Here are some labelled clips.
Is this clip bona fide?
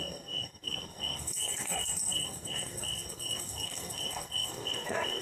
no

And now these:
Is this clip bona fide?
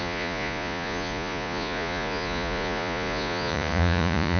no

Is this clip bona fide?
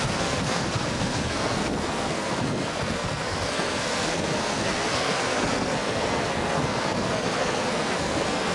no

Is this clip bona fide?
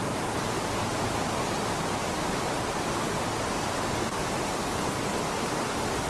yes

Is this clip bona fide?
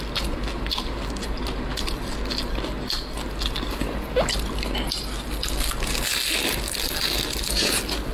yes